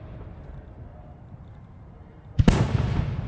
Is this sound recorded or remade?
remade